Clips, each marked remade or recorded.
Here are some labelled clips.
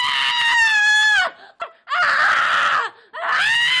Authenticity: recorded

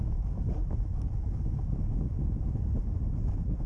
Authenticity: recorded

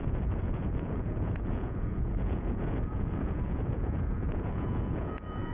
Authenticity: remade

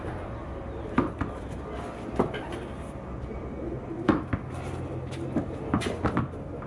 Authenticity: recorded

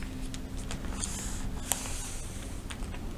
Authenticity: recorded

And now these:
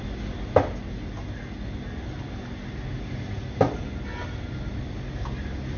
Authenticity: recorded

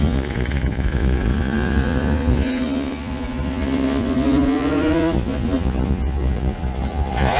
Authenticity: remade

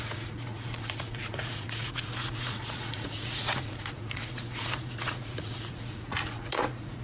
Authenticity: remade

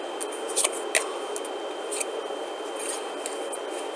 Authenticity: recorded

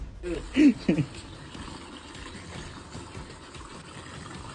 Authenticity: recorded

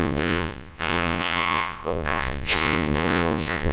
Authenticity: remade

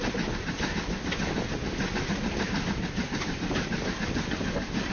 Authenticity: recorded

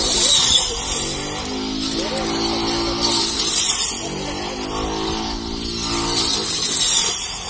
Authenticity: recorded